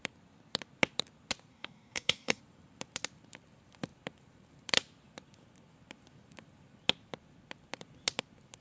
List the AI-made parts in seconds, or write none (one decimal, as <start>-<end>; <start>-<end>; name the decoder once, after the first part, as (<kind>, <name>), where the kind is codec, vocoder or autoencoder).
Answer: 1.5-2.4 (codec, SNAC)